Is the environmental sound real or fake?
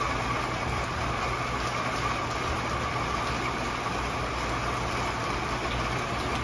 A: real